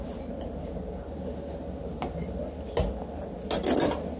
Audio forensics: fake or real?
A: real